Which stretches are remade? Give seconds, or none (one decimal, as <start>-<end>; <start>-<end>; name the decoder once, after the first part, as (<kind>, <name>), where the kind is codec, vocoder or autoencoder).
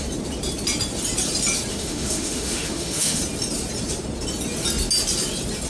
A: 1.7-3.2 (autoencoder, DAC-VAE)